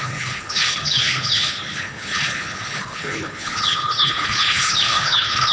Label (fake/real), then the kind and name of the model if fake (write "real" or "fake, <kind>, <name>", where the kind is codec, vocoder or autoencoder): fake, codec, HILCodec